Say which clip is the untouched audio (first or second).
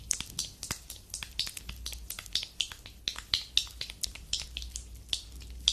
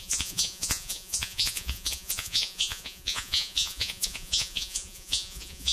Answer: first